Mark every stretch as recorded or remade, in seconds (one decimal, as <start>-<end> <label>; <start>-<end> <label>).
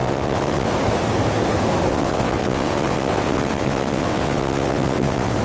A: 0.0-0.7 remade; 0.7-1.9 recorded; 1.9-5.4 remade